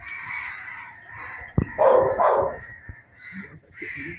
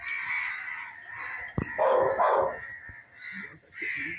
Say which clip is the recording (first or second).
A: second